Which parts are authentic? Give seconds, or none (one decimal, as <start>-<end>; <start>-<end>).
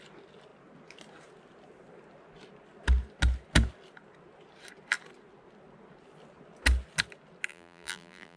0.0-7.5